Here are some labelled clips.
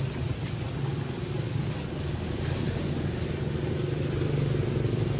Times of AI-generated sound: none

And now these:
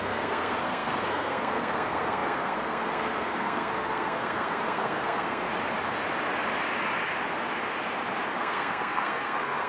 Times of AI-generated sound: 0.0-5.5 (codec, SNAC); 8.4-9.7

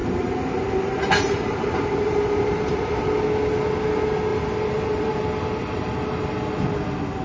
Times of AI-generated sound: 0.0-3.1 (vocoder, BigVGAN v2); 4.3-5.2

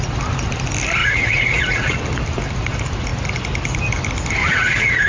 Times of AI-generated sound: 1.0-2.0 (vocoder, Vocos); 4.4-5.1

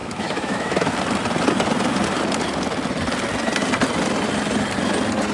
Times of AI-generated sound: 0.0-0.9 (autoencoder, DAC-VAE)

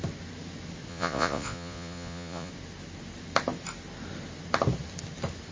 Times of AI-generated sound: 0.9-2.5 (vocoder, Vocos)

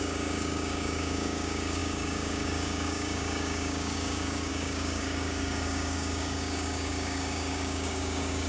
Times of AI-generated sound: 0.0-8.5 (codec, DAC)

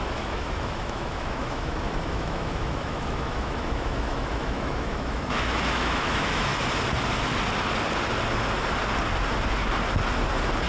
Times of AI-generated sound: 0.0-6.5 (autoencoder, DAC-VAE)